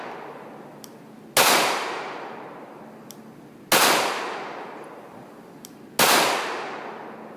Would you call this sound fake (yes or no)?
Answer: no